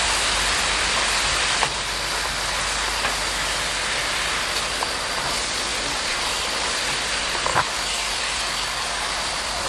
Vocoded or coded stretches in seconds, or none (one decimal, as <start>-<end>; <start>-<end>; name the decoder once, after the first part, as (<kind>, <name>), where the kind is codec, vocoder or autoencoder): 7.5-9.1 (codec, DAC)